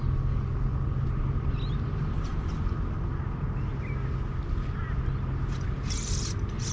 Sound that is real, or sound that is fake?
real